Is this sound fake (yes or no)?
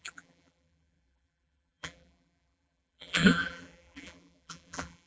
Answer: yes